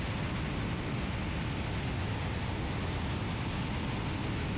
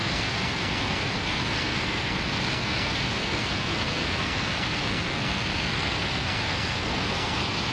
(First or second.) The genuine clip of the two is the first